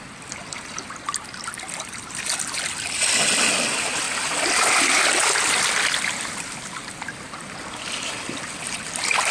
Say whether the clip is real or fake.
real